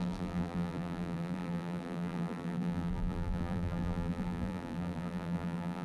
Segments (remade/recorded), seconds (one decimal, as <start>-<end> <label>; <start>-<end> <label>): 0.0-5.8 remade